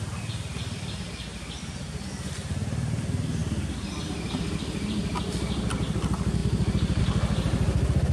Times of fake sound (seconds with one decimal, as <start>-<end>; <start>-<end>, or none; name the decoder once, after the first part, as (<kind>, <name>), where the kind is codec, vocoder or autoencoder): 3.4-4.0 (vocoder, BigVGAN v2)